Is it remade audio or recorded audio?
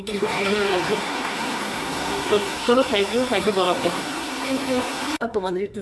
remade